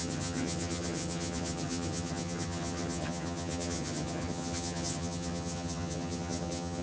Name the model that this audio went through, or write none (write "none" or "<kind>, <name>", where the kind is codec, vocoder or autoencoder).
vocoder, HiFi-GAN